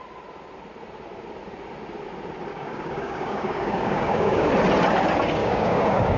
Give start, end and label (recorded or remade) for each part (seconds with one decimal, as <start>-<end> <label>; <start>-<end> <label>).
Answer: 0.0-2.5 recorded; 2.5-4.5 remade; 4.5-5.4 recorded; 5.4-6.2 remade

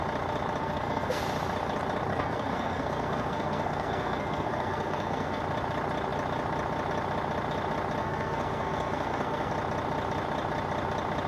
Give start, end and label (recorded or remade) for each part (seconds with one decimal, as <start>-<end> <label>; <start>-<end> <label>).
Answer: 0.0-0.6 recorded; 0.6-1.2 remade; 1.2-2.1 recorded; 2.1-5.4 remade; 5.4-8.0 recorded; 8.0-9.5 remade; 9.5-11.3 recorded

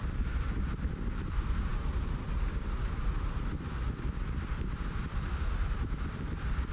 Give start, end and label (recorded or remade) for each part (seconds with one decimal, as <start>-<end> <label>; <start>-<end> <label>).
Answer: 0.0-6.7 recorded